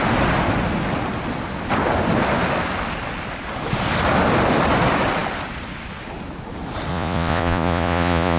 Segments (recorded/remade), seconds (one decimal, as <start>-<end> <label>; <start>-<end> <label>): 0.0-6.9 recorded; 6.9-8.4 remade